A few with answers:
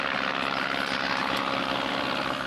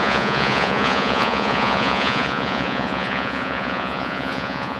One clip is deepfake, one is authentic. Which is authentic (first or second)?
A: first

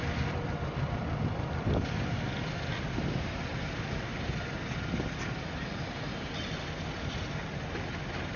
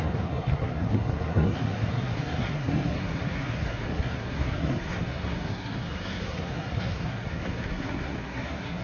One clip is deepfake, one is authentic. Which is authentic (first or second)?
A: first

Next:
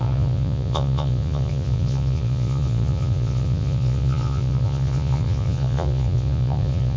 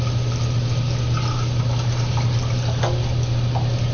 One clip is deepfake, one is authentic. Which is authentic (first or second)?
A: second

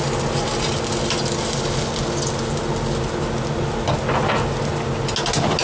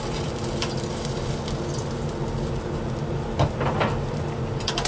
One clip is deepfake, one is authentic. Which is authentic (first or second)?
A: first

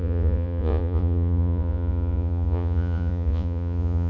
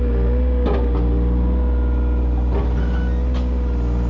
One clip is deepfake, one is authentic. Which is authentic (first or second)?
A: second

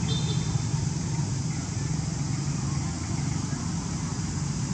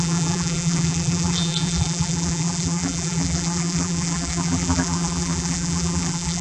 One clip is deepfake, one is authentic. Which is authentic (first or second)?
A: first